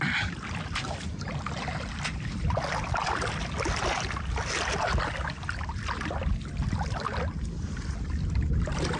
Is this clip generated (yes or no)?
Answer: no